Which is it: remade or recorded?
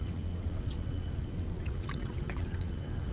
remade